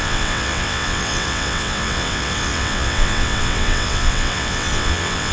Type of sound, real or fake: fake